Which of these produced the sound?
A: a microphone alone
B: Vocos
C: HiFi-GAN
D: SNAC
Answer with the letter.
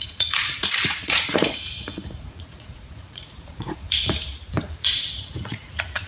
B